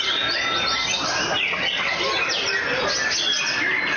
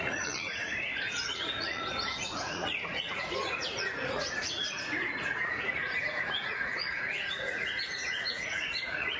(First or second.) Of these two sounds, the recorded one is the first